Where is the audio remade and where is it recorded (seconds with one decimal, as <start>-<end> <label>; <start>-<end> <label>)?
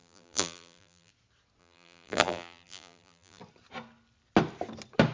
0.0-1.1 remade; 1.1-1.6 recorded; 1.6-3.4 remade; 3.4-5.1 recorded